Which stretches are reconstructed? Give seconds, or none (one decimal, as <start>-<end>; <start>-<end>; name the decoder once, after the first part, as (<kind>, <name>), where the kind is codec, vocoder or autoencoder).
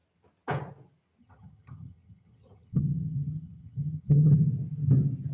1.2-4.3 (vocoder, HiFi-GAN)